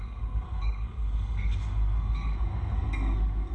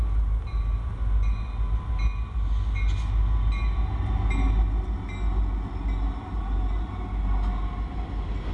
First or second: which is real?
second